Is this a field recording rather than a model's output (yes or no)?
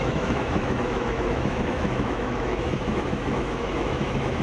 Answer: no